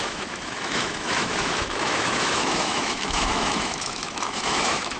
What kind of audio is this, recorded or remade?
remade